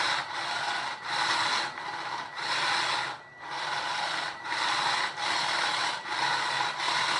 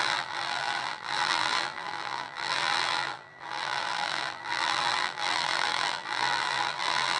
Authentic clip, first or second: first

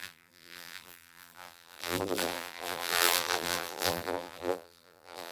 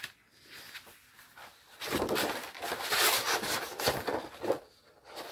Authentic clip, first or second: second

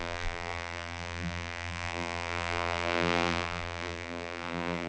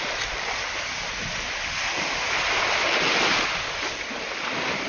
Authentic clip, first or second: second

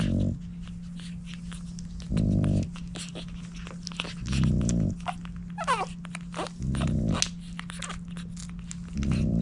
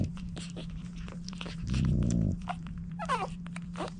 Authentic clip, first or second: first